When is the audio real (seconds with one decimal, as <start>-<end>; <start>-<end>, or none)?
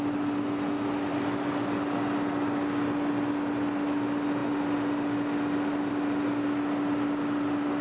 0.0-7.8